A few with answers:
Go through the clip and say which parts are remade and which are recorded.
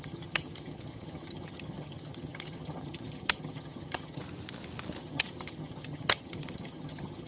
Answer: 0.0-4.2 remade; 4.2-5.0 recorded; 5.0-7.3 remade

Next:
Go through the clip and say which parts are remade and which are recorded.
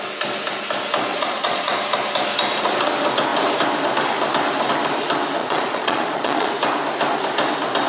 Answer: 0.0-1.1 recorded; 1.1-1.7 remade; 1.7-5.4 recorded; 5.4-6.5 remade; 6.5-7.9 recorded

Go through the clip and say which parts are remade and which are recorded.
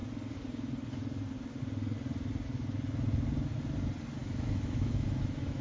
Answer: 0.0-4.2 recorded; 4.2-5.6 remade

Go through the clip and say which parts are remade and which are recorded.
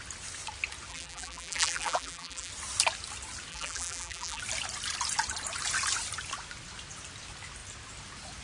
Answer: 0.0-0.9 recorded; 0.9-2.5 remade; 2.5-3.5 recorded; 3.5-4.4 remade; 4.4-8.4 recorded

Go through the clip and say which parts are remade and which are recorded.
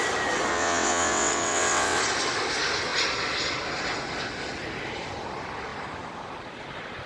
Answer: 0.0-0.5 recorded; 0.5-2.0 remade; 2.0-7.1 recorded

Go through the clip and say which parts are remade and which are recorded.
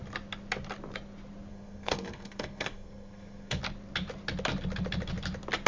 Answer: 0.0-1.5 recorded; 1.5-3.6 remade; 3.6-5.7 recorded